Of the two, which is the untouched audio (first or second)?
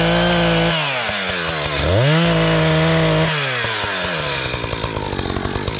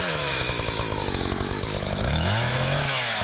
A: first